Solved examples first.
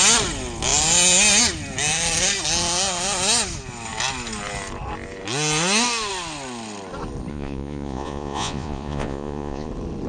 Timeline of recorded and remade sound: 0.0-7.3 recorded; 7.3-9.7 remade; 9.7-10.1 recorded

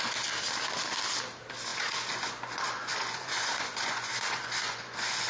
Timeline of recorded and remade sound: 0.0-1.7 recorded; 1.7-5.3 remade